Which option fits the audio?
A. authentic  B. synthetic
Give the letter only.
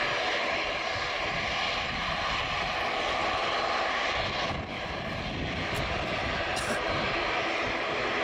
B